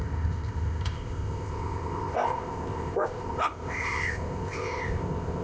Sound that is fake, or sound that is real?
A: fake